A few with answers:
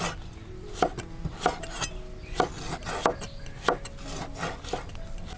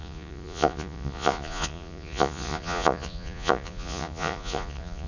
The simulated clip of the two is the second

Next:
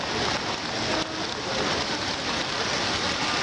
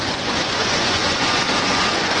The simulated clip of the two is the second